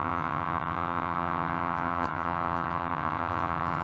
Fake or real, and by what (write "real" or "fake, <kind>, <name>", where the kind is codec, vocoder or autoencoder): fake, vocoder, HiFi-GAN